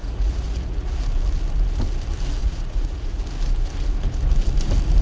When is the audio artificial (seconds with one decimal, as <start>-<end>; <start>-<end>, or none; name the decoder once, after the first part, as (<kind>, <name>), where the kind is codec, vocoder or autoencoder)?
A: 0.0-1.0 (vocoder, Vocos); 2.4-3.2